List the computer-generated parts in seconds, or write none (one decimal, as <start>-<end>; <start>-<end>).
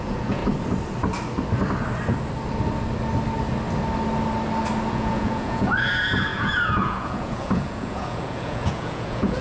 0.0-0.4; 4.9-9.4